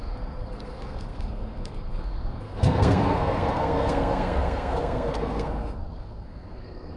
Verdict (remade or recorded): remade